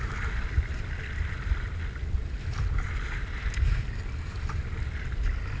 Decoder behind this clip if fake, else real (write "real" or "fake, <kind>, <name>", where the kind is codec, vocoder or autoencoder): real